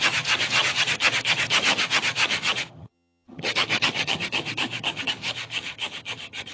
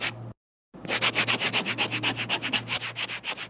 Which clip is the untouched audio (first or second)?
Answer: second